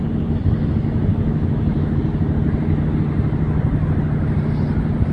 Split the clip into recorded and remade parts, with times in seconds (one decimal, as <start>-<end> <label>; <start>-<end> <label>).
0.0-1.1 recorded; 1.1-2.0 remade; 2.0-5.1 recorded